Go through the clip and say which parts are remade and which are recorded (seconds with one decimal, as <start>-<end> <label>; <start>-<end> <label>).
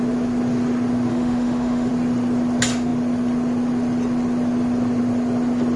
0.0-1.1 recorded; 1.1-1.9 remade; 1.9-5.8 recorded